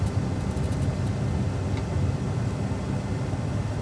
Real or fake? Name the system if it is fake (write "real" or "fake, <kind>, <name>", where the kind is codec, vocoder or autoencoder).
real